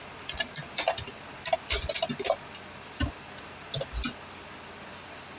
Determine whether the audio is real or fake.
real